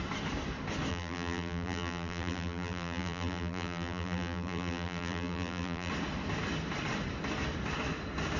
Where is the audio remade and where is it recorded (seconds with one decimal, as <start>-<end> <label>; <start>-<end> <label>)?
0.0-0.9 recorded; 0.9-5.9 remade; 5.9-8.4 recorded